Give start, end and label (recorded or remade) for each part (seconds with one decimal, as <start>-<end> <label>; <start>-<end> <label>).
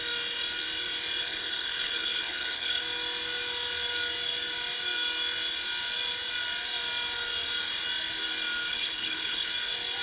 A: 0.0-1.2 recorded; 1.2-2.8 remade; 2.8-8.7 recorded; 8.7-9.5 remade; 9.5-10.0 recorded